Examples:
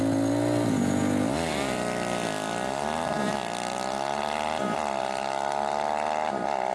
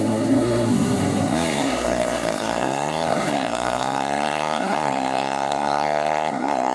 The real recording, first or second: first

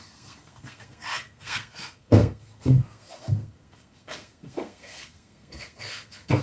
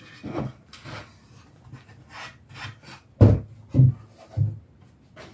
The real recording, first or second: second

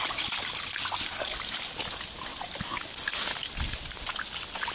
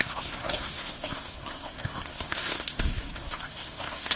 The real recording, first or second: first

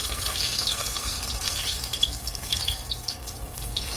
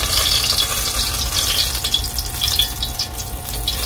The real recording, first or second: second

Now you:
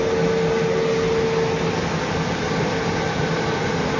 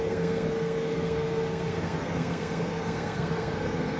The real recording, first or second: first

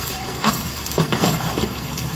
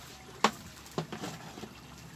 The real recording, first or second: second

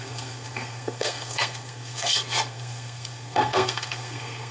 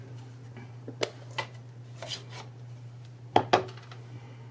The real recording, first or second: second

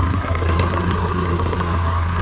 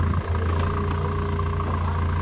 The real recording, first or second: second